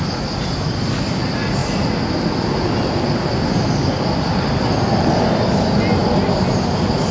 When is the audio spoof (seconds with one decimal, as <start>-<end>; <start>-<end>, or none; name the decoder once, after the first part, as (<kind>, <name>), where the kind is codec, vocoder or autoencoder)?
none